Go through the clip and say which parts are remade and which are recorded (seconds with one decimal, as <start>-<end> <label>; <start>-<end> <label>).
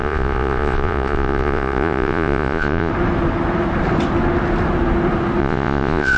0.0-2.9 remade; 2.9-5.4 recorded; 5.4-6.2 remade